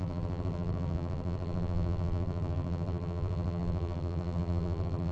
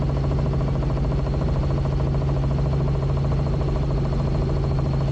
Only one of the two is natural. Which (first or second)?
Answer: second